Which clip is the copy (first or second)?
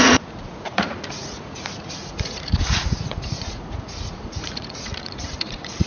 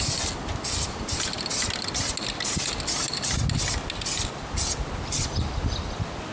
first